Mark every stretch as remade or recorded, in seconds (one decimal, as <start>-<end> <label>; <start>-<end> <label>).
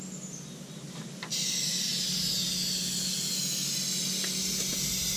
0.0-5.2 recorded